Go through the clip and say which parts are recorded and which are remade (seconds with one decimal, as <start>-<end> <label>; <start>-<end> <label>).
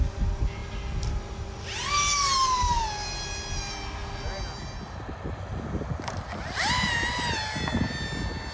0.0-8.5 recorded